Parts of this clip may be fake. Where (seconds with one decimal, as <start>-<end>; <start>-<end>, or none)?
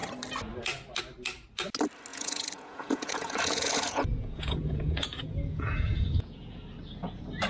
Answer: 2.1-6.6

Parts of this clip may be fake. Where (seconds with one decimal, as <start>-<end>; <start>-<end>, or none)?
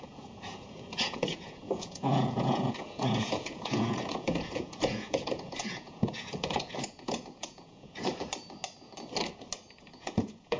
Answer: 0.0-8.1; 9.8-10.6